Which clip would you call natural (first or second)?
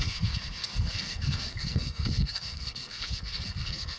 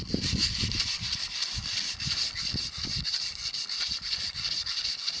second